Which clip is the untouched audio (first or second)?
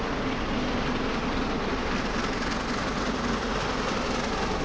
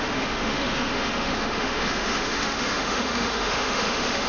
first